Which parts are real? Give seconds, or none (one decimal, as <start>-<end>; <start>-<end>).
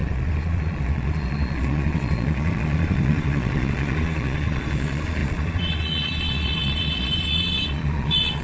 none